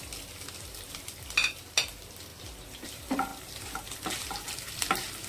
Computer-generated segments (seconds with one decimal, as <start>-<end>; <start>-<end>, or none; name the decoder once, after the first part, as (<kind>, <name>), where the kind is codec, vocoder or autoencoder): 0.0-1.4 (vocoder, BigVGAN v2); 1.9-5.3